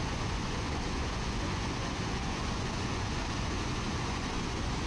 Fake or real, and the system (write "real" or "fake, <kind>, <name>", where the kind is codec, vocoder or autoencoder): fake, vocoder, Vocos